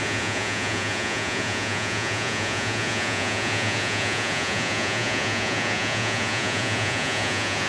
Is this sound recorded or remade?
remade